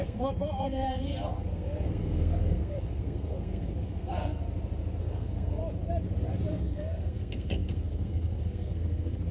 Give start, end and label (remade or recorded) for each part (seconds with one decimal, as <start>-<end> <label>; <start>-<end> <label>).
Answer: 0.0-4.4 remade; 4.4-5.0 recorded; 5.0-5.6 remade; 5.6-6.5 recorded; 6.5-9.3 remade